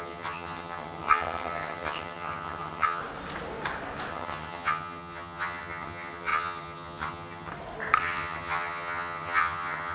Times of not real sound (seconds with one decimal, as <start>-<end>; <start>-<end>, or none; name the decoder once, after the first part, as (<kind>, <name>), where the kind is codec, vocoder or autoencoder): 0.0-3.0 (vocoder, HiFi-GAN); 4.1-7.5; 8.0-9.9